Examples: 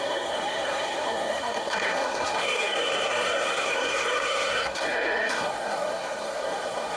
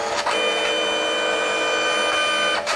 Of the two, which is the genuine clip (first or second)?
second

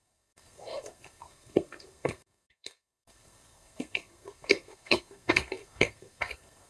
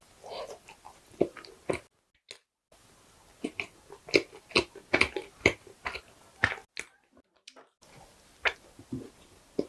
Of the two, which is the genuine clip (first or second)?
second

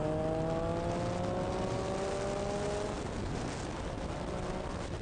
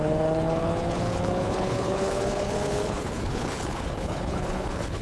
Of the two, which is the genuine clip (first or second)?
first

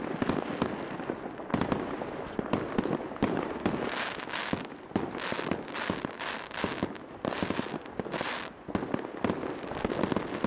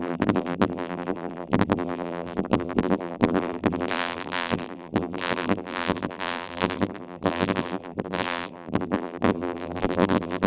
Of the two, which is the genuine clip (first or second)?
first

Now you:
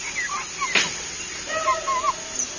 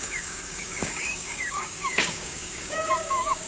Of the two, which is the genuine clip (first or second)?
first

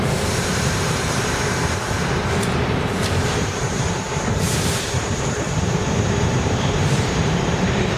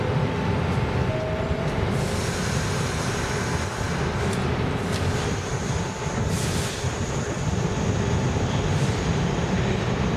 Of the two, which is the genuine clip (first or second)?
second